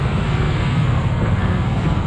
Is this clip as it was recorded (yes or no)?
no